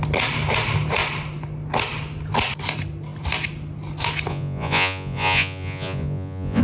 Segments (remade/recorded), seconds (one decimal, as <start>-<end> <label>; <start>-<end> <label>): 0.0-4.3 recorded; 4.3-6.6 remade